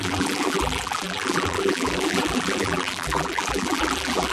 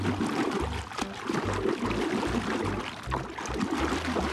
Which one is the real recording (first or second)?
second